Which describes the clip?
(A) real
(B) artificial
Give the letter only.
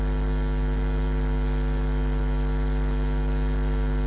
A